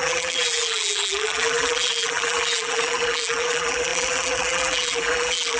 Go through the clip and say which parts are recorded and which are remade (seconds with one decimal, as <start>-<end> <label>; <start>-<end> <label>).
0.0-5.6 remade